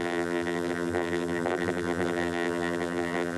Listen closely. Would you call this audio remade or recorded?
remade